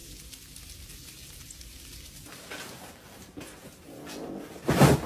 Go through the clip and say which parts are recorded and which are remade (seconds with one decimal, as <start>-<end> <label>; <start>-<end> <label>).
0.0-5.1 recorded